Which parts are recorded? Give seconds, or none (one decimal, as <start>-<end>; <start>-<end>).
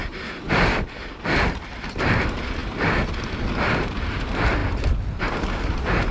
0.0-6.1